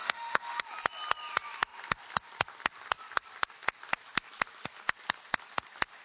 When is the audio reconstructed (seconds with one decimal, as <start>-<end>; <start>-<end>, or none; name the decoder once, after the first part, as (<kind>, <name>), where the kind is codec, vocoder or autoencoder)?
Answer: 0.0-0.6 (autoencoder, DAC-VAE)